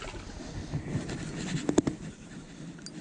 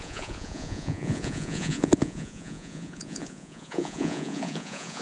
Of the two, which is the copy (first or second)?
second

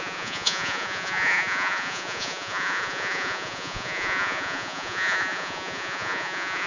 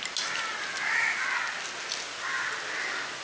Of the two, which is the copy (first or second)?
first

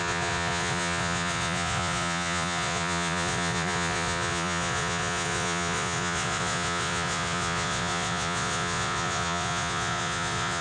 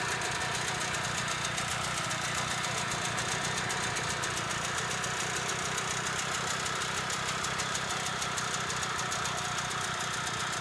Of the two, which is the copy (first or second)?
first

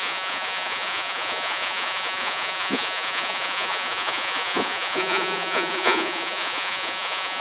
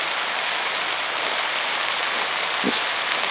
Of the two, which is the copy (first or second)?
first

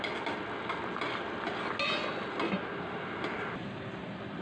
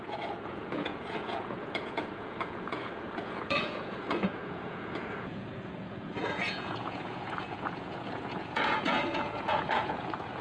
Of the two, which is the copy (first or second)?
second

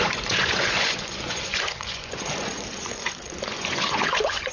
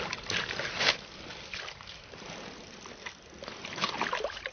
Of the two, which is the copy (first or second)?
first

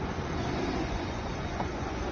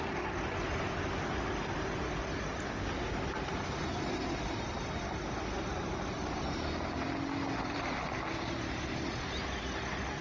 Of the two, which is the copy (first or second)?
first